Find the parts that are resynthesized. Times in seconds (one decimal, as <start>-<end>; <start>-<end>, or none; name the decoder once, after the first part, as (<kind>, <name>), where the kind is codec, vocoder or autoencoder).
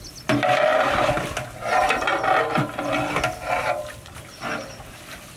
none